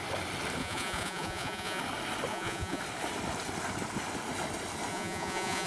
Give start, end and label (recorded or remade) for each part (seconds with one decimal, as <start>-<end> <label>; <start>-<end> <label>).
0.0-0.6 recorded; 0.6-1.8 remade; 1.8-2.3 recorded; 2.3-2.8 remade; 2.8-4.9 recorded; 4.9-5.7 remade